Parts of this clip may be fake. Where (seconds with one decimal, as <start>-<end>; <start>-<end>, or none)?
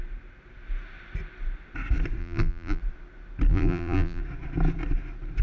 2.2-2.8; 3.5-4.2